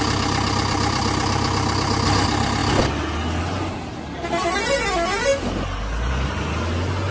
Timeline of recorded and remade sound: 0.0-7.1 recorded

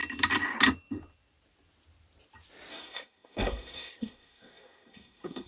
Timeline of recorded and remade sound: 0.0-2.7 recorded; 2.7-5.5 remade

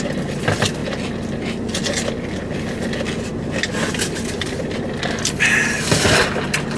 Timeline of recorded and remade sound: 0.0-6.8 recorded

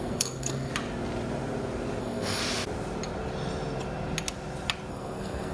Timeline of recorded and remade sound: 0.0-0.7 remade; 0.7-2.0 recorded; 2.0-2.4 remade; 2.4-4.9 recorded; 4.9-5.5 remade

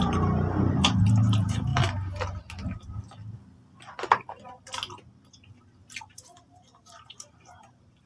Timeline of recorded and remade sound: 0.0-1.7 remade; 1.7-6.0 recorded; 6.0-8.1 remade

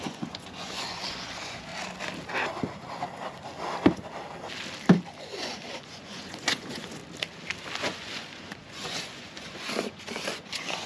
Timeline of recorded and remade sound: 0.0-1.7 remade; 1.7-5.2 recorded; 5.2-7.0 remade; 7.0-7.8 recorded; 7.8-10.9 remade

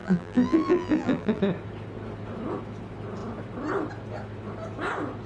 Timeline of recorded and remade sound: 0.0-1.4 remade; 1.4-5.3 recorded

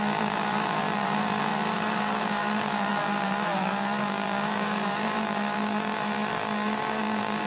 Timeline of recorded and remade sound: 0.0-1.5 remade; 1.5-2.0 recorded; 2.0-7.5 remade